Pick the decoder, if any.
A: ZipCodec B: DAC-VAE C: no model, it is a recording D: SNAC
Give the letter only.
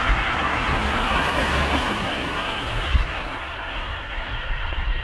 D